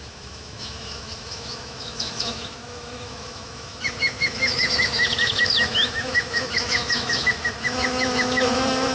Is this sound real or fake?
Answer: fake